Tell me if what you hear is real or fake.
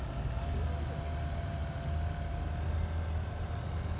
real